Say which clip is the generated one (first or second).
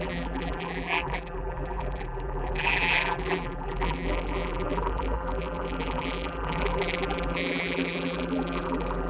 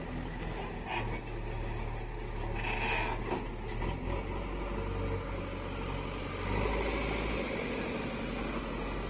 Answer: first